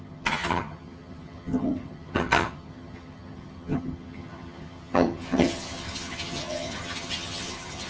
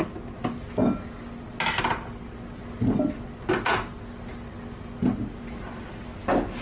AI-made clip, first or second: first